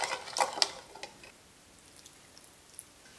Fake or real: real